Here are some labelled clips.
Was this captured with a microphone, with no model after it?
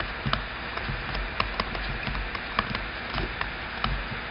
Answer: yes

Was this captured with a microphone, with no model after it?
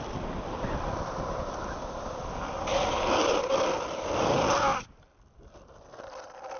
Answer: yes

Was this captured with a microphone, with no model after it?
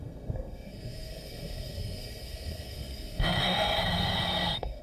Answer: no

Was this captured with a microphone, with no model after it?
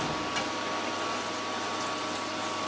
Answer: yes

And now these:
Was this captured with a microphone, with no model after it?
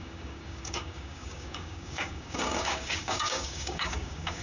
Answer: no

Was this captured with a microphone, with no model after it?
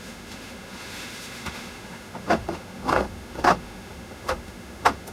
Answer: no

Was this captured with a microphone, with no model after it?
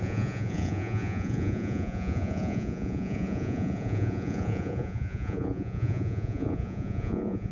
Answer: no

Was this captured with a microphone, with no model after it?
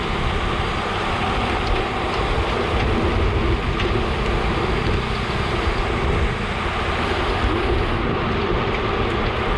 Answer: yes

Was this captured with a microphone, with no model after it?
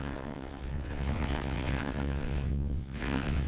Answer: no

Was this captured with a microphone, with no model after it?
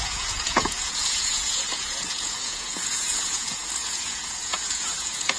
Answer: no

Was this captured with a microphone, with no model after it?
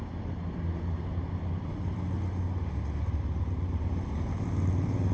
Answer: yes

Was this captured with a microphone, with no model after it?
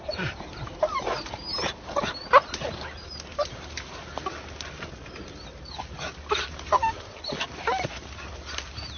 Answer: yes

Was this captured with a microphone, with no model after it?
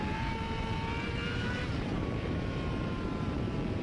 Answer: no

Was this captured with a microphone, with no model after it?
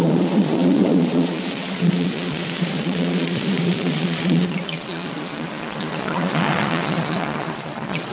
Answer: no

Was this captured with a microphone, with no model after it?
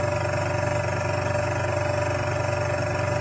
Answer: yes